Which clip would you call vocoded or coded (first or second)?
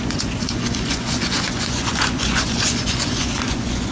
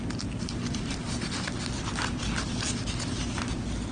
first